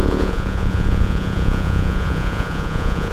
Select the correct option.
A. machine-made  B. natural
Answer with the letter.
A